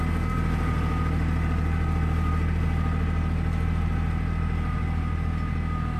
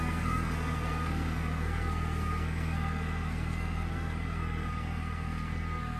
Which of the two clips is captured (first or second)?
first